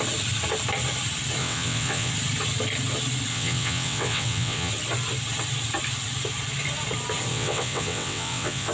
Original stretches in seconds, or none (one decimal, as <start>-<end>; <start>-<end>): 0.0-1.4; 2.1-3.3; 4.7-7.3